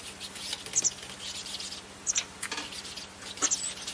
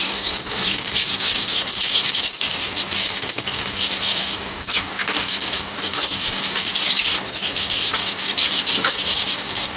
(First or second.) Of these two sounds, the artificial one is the second